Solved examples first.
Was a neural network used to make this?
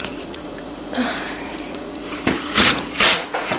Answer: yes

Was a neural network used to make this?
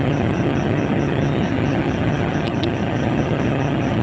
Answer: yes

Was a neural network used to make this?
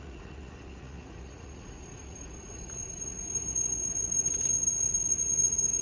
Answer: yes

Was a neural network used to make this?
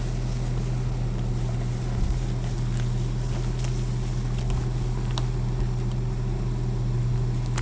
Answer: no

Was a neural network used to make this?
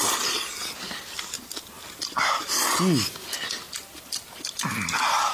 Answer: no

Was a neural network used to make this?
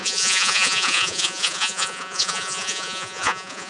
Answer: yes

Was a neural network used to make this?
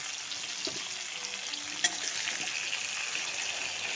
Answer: no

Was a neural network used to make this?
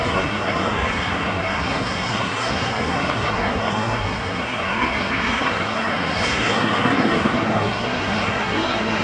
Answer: yes